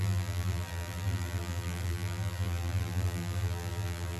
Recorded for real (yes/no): no